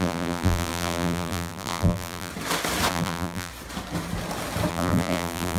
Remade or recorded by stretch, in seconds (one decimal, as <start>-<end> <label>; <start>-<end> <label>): 0.0-2.3 remade; 2.3-2.9 recorded; 2.9-3.5 remade; 3.5-4.7 recorded; 4.7-5.6 remade